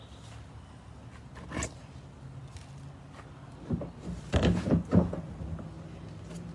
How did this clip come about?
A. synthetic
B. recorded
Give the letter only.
B